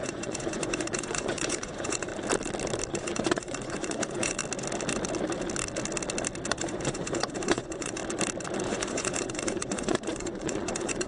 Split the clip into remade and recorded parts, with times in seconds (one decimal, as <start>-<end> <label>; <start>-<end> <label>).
0.0-2.1 remade; 2.1-2.9 recorded; 2.9-4.4 remade; 4.4-6.5 recorded; 6.5-8.0 remade; 8.0-8.6 recorded; 8.6-11.1 remade